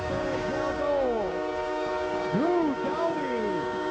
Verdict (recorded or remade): remade